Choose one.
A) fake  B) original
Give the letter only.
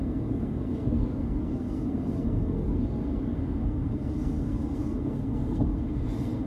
A